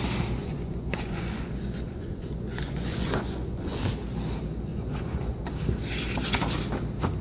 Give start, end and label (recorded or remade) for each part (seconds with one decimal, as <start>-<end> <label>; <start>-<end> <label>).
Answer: 0.0-0.4 recorded; 0.4-3.8 remade; 3.8-4.7 recorded; 4.7-5.5 remade; 5.5-7.2 recorded